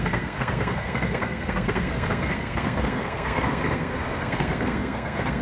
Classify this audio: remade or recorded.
remade